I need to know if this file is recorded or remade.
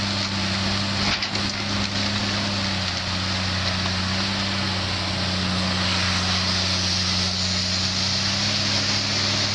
recorded